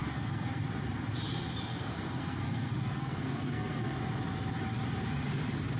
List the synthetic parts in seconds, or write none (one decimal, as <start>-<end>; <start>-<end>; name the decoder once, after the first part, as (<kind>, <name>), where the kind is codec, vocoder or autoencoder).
0.0-0.6 (codec, SNAC); 1.7-4.0